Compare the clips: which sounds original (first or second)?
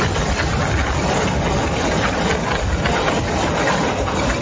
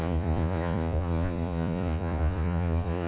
first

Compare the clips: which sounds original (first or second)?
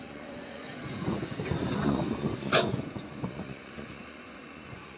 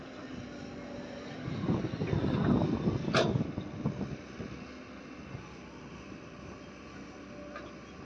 second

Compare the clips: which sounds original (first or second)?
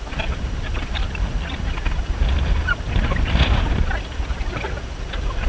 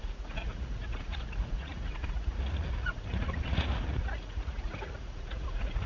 first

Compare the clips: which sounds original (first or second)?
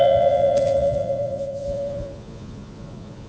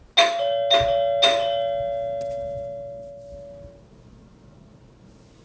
second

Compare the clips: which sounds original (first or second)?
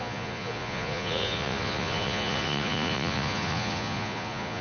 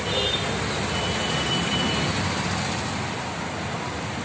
second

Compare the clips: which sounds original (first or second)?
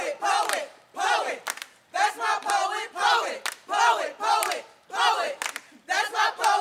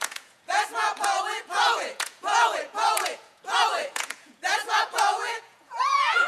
first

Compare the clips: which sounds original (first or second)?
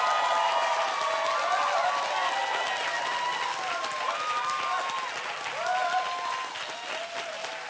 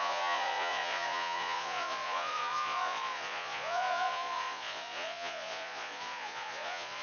first